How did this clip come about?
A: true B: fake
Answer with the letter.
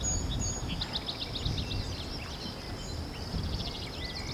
A